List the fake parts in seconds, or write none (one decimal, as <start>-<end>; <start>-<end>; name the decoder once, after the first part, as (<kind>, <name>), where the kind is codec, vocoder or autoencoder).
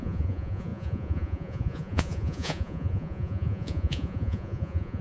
0.0-5.0 (vocoder, Vocos)